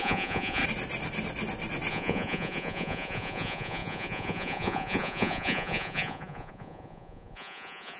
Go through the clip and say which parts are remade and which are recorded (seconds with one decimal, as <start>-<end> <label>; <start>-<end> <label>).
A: 0.0-0.6 remade; 0.6-1.9 recorded; 1.9-8.0 remade